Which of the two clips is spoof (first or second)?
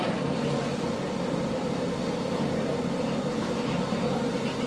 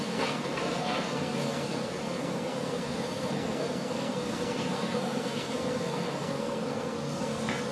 second